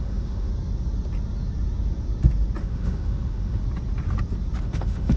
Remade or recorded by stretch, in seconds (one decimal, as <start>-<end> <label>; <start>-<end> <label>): 0.0-0.5 remade; 0.5-2.6 recorded; 2.6-3.6 remade; 3.6-4.6 recorded; 4.6-5.2 remade